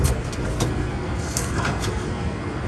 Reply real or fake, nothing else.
fake